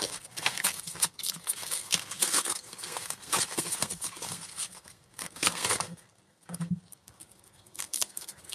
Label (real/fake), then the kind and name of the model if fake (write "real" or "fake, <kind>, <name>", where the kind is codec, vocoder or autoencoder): fake, codec, SNAC